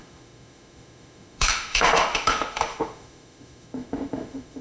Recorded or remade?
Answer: remade